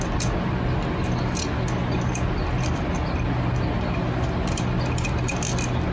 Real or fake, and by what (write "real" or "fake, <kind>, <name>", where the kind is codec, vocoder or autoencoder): real